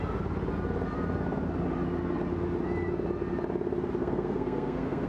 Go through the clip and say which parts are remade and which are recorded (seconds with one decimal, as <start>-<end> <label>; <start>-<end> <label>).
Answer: 0.0-4.0 recorded; 4.0-5.1 remade